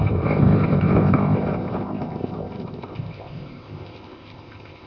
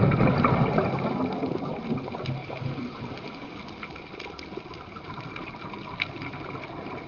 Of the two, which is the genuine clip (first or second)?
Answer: second